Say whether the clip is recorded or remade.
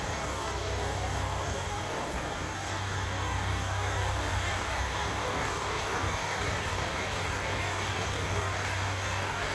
remade